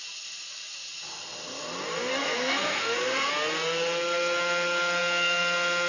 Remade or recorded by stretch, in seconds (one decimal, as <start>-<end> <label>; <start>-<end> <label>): 0.0-2.1 recorded; 2.1-3.3 remade; 3.3-5.9 recorded